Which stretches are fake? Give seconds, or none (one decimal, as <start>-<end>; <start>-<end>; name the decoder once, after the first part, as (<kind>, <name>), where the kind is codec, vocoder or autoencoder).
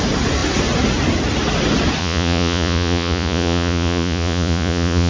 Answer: 2.0-5.1 (vocoder, Vocos)